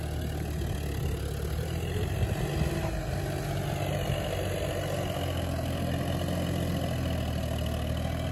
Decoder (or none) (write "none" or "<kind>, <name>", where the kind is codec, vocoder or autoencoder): none